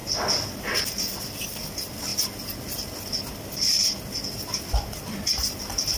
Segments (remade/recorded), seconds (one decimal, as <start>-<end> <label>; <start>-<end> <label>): 0.0-6.0 recorded